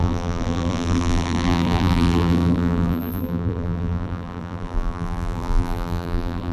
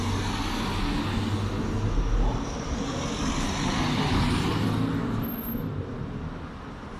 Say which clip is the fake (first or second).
first